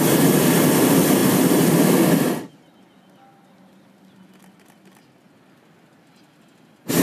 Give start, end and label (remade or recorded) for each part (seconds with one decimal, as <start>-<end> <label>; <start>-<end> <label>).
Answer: 0.0-7.0 recorded